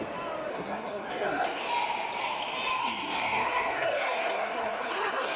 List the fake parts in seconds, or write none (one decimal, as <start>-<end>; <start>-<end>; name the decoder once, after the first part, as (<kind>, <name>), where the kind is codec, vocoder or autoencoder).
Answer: 0.5-1.6 (codec, SNAC); 2.8-5.4